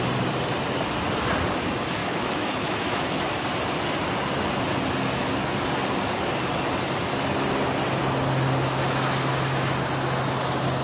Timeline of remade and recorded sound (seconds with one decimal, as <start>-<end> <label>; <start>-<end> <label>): 0.0-2.0 recorded; 2.0-3.2 remade; 3.2-10.8 recorded